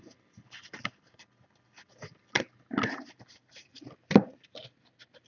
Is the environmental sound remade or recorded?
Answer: recorded